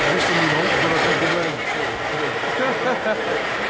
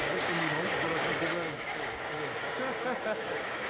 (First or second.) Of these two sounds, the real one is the first